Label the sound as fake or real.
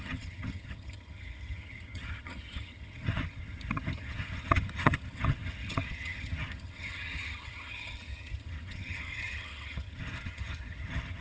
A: fake